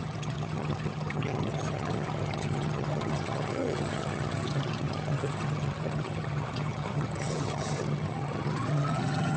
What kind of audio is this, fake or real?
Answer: fake